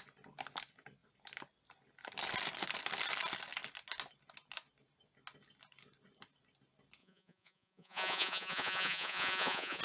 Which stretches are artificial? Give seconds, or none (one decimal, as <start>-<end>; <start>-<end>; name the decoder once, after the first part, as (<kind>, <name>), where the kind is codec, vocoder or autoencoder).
7.0-9.8 (vocoder, Vocos)